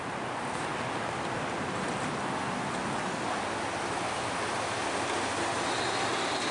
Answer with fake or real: real